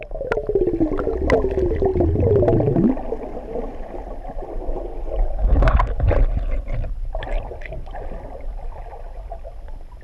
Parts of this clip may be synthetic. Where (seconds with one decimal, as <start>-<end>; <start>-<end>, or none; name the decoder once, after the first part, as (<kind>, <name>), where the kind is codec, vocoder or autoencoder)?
none